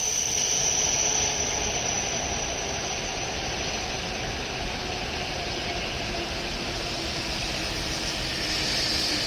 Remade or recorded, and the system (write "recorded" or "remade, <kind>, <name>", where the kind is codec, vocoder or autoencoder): recorded